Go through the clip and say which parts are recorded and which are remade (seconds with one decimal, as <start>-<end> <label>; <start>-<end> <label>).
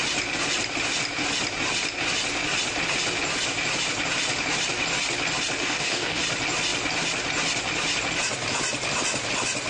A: 0.0-5.6 recorded; 5.6-6.2 remade; 6.2-9.7 recorded